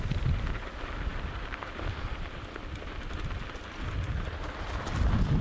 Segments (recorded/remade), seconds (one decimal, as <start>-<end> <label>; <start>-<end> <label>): 0.0-5.4 recorded